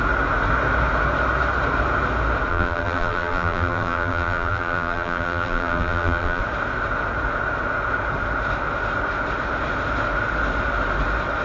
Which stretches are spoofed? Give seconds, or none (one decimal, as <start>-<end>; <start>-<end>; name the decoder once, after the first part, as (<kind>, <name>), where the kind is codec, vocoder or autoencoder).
2.5-6.4 (vocoder, BigVGAN v2)